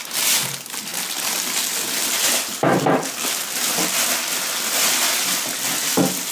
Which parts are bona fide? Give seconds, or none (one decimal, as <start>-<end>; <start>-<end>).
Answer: 0.0-6.3